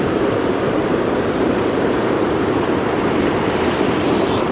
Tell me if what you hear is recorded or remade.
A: remade